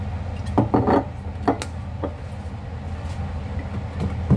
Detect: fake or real real